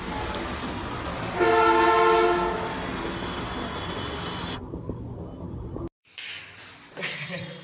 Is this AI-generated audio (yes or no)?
no